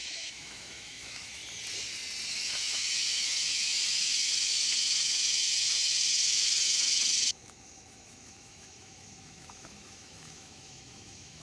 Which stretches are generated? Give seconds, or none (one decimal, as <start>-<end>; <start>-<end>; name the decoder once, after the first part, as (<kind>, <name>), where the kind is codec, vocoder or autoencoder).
0.0-1.4 (autoencoder, DAC-VAE); 2.3-11.4